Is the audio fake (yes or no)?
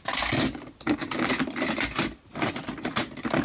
no